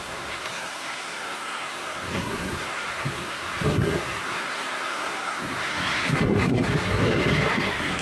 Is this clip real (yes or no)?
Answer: no